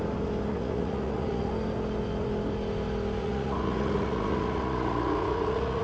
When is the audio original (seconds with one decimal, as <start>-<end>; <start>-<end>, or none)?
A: 0.0-0.5; 1.5-3.2